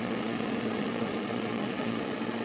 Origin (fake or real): fake